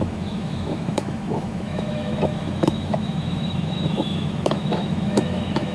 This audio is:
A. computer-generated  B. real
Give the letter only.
A